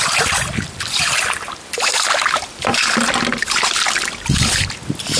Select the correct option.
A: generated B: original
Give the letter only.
B